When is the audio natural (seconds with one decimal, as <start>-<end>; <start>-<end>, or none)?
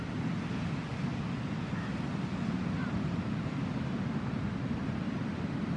0.0-5.8